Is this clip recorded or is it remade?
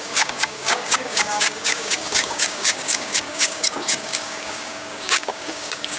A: remade